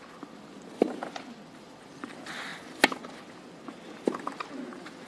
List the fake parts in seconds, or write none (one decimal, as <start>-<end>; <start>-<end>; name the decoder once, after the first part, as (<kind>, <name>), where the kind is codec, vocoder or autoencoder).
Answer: none